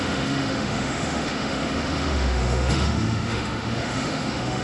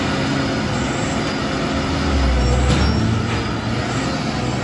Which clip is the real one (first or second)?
second